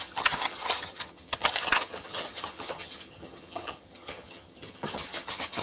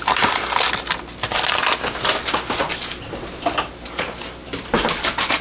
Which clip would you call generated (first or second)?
first